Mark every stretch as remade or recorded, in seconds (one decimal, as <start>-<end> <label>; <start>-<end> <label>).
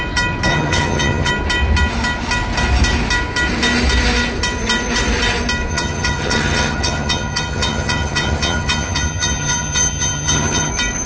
0.0-0.5 recorded; 0.5-1.3 remade; 1.3-5.7 recorded; 5.7-10.7 remade; 10.7-11.1 recorded